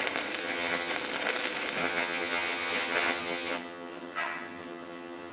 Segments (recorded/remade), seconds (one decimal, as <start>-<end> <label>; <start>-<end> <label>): 0.0-0.4 recorded; 0.4-0.9 remade; 0.9-1.8 recorded; 1.8-5.3 remade